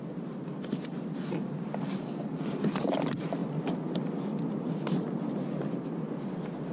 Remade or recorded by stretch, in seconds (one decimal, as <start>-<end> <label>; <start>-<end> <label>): 0.0-6.7 recorded